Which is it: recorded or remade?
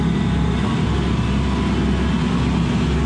recorded